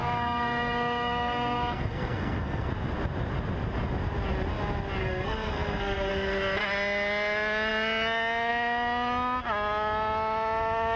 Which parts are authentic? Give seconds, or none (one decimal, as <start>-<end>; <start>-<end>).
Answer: 2.7-5.0; 6.1-11.0